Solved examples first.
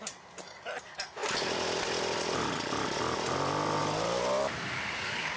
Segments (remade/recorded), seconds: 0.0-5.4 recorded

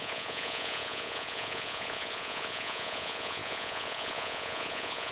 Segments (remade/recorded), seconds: 0.0-5.1 remade

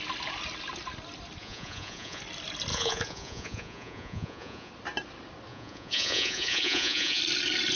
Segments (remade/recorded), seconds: 0.0-1.4 recorded; 1.4-2.2 remade; 2.2-2.7 recorded; 2.7-4.7 remade; 4.7-5.5 recorded; 5.5-7.2 remade; 7.2-7.8 recorded

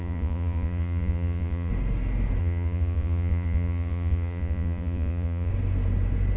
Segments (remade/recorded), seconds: 0.0-1.7 remade; 1.7-2.4 recorded; 2.4-5.5 remade; 5.5-6.4 recorded